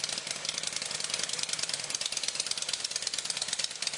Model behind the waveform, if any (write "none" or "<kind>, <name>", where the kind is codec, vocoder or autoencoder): vocoder, BigVGAN v2